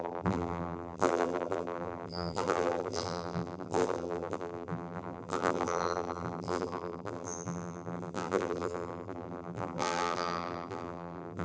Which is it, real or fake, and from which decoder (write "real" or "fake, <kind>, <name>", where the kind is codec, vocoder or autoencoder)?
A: fake, vocoder, BigVGAN v2